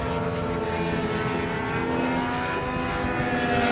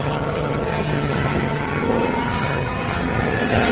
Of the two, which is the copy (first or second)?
second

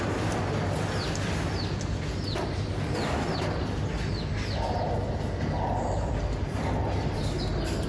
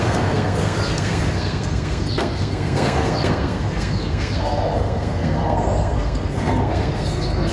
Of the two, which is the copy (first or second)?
second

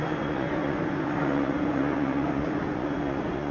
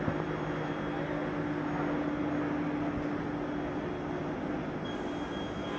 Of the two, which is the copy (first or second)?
first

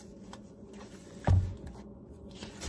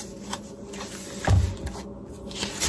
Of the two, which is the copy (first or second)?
first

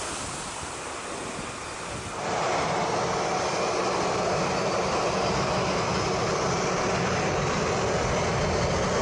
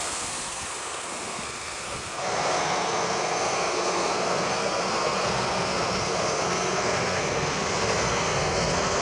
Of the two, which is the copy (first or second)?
second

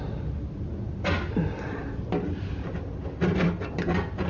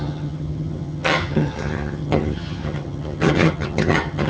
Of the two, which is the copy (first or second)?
second